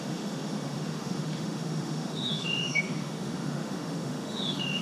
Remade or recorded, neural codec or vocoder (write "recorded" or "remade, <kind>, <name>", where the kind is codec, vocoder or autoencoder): remade, autoencoder, DAC-VAE